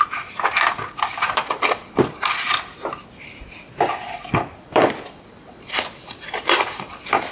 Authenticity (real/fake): fake